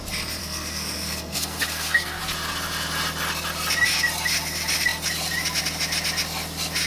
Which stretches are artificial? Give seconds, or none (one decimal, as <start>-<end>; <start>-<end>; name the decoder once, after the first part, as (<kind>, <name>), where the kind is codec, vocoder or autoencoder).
0.4-2.2 (codec, SNAC)